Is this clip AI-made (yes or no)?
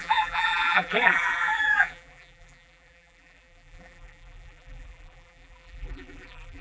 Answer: yes